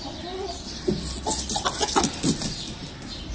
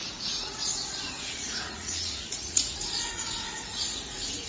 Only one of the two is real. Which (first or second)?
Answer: first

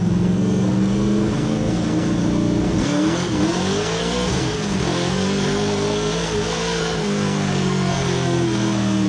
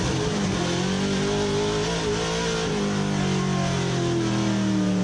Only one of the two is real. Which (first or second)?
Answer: second